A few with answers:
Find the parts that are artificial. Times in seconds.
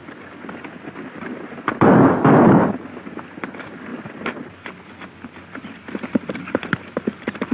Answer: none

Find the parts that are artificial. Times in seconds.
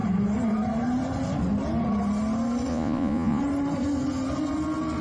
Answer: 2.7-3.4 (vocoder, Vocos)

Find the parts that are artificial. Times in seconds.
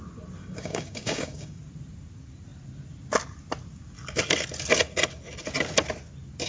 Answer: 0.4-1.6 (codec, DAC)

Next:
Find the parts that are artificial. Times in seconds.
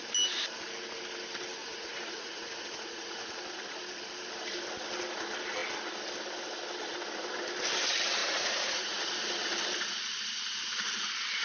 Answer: 1.6-3.3 (vocoder, Vocos); 8.2-9.0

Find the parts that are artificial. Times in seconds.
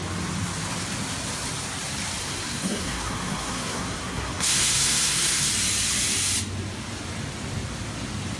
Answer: 2.2-5.5 (codec, SNAC)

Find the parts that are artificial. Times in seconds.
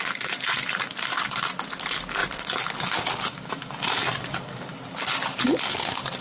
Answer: 0.6-1.1 (vocoder, BigVGAN v2); 2.2-3.5